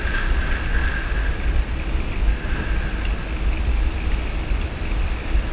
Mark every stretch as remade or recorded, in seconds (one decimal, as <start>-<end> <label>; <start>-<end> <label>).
0.0-5.5 recorded